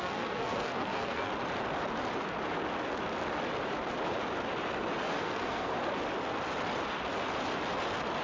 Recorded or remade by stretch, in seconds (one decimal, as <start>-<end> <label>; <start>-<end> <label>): 0.0-1.3 remade; 1.3-5.2 recorded; 5.2-5.7 remade; 5.7-8.2 recorded